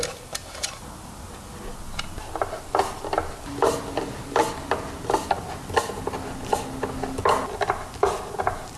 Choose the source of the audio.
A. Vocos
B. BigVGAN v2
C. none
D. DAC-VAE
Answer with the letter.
C